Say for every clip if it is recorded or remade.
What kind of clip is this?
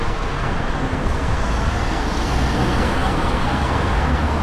remade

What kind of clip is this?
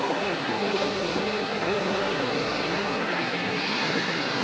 remade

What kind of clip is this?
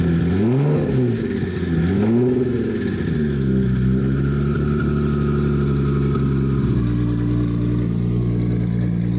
recorded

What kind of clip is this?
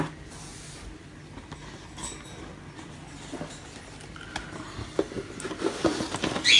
recorded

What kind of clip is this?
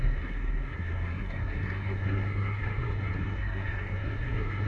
remade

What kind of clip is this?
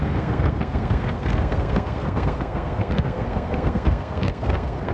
remade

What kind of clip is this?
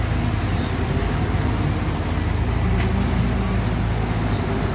recorded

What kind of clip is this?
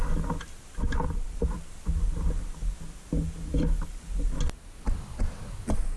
recorded